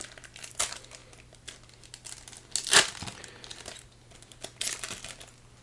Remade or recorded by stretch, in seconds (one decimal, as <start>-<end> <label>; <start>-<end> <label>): 0.0-5.6 recorded